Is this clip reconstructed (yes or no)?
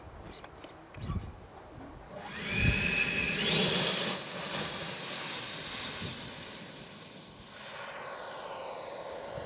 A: no